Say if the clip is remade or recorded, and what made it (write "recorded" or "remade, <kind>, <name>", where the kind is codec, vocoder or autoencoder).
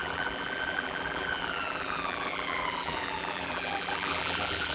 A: remade, vocoder, BigVGAN v2